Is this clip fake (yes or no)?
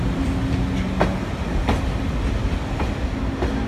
no